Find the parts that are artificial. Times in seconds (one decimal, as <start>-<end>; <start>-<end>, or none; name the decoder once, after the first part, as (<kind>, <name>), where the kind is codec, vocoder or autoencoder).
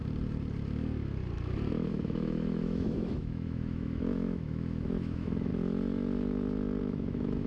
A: 1.9-5.5 (autoencoder, DAC-VAE); 6.8-7.5